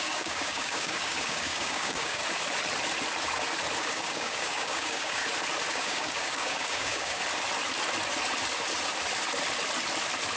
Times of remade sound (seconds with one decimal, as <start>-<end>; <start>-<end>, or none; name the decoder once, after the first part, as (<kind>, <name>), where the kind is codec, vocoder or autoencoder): 0.0-2.2 (codec, DAC); 3.8-5.2; 5.7-7.2